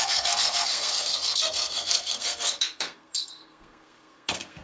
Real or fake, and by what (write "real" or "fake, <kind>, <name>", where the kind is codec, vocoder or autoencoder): fake, codec, SNAC